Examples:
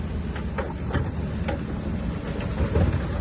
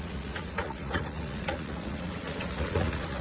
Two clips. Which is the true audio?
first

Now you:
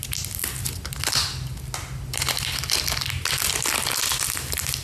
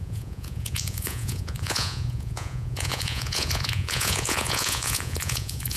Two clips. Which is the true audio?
first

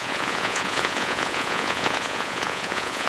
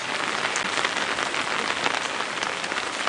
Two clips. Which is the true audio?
second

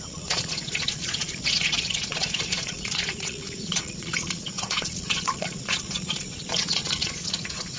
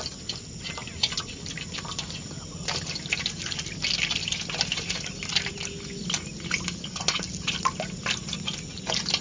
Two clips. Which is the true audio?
second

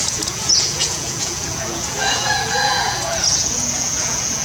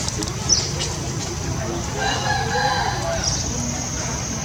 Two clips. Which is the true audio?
second